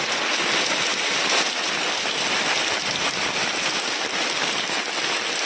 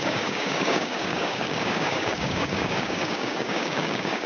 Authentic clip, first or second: first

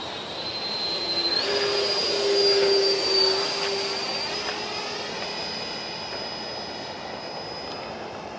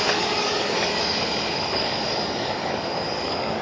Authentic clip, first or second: first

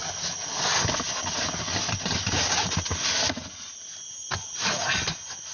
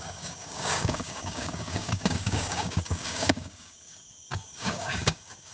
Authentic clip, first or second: first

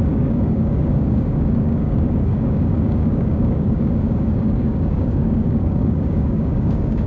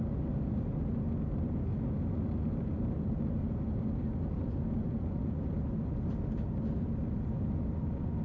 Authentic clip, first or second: second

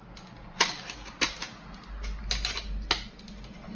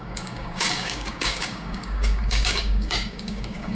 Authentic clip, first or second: first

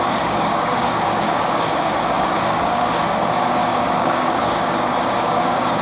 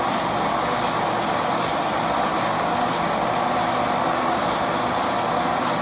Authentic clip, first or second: second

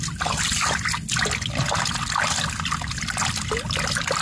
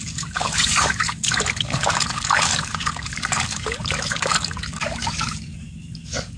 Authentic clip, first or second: first